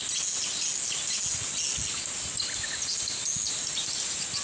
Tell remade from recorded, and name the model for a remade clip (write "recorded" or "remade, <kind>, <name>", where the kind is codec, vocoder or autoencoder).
recorded